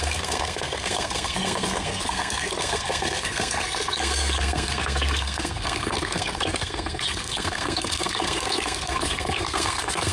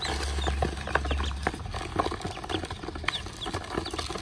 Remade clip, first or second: first